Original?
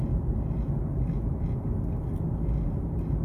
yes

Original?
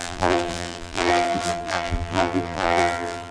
no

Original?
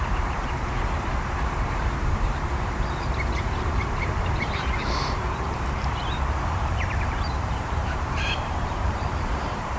no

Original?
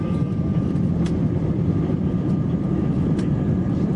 no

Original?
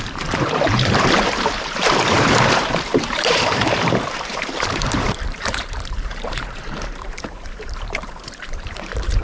no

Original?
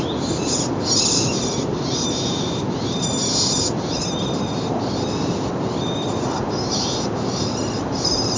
yes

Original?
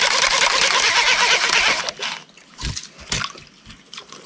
yes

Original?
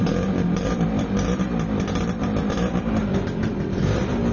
no